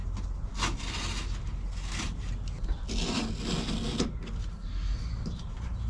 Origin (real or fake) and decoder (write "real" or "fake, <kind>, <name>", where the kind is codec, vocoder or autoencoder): real